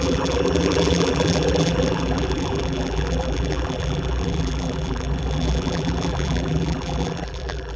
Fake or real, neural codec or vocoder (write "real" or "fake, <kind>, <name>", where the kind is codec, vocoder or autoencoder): fake, vocoder, BigVGAN v2